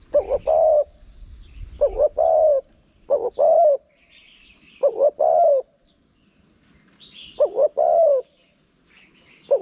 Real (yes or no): yes